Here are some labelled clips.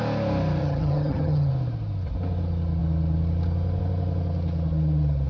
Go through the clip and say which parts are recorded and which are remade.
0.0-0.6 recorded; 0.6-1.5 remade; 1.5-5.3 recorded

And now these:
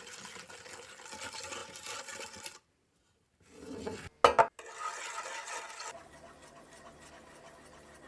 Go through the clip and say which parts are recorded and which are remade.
0.0-8.1 recorded

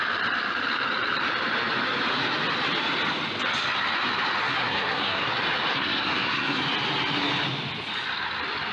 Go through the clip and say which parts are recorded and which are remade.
0.0-4.4 recorded; 4.4-5.3 remade; 5.3-5.7 recorded; 5.7-6.6 remade; 6.6-8.7 recorded